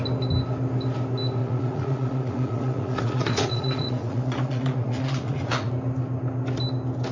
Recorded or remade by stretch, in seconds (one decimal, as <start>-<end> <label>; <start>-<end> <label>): 0.0-1.4 recorded; 1.4-5.7 remade; 5.7-7.1 recorded